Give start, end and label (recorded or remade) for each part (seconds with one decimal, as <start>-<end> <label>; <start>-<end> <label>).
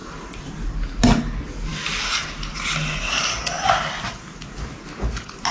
0.0-0.5 remade; 0.5-5.5 recorded